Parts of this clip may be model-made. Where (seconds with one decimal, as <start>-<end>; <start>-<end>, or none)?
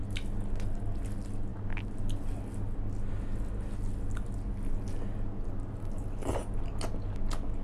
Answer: none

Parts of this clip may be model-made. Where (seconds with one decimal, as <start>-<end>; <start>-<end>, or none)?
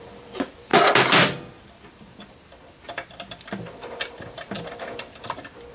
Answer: 0.0-0.7; 1.6-5.7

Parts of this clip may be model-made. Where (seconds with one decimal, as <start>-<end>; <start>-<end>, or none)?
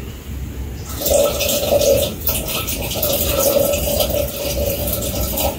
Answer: none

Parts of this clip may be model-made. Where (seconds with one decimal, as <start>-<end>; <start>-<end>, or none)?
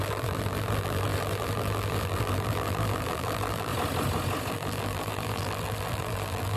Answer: 0.0-3.7; 4.5-6.6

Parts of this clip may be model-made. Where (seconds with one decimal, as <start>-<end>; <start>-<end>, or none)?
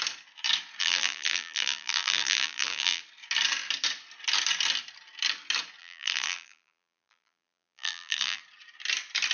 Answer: 0.8-3.0; 5.8-8.4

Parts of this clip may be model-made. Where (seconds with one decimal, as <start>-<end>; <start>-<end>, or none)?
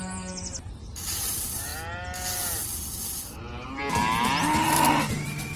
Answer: 0.0-1.7; 5.1-5.6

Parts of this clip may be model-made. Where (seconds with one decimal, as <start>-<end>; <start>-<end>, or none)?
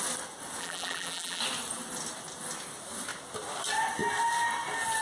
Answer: 0.6-1.4